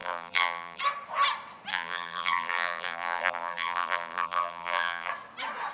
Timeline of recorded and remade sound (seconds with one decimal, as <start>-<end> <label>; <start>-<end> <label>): 0.0-0.8 remade; 0.8-1.7 recorded; 1.7-5.1 remade; 5.1-5.7 recorded